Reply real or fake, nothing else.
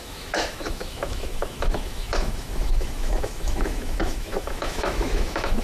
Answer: fake